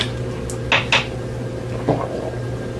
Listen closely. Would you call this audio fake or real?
real